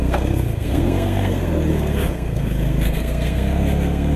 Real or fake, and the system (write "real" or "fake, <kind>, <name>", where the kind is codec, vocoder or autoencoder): fake, codec, SNAC